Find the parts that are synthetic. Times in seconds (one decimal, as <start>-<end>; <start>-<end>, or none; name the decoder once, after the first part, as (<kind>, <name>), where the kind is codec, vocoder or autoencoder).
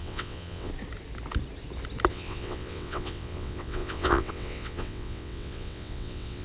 0.0-0.7 (vocoder, WaveNeXt); 2.1-6.4